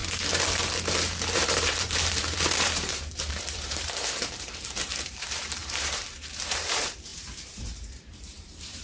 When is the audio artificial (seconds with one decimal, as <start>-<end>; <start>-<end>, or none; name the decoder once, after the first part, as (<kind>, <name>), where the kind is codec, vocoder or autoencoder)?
1.2-8.8 (vocoder, BigVGAN v2)